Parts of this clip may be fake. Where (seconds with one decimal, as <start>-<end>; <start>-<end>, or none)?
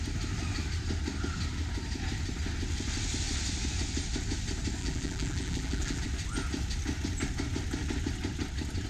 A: 4.8-6.0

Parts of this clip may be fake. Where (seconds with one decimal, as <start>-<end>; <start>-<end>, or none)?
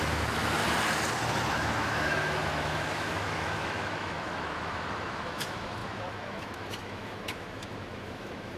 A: 0.0-0.6; 1.5-8.6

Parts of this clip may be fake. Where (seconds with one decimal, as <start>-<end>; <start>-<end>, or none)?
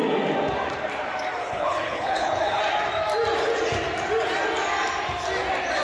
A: 1.4-2.6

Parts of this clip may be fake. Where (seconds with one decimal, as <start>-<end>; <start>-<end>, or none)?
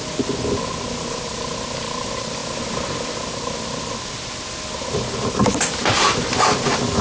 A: none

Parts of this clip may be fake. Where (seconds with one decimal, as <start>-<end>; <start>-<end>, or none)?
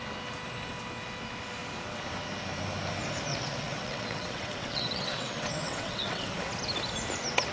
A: 3.3-6.3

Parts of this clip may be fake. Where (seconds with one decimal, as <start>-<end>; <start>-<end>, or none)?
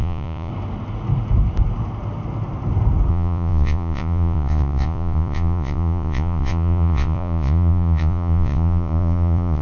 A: 0.0-0.5; 3.1-9.6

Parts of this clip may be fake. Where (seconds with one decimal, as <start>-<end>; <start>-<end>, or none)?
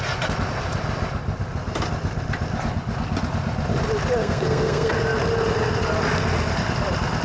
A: 4.2-4.9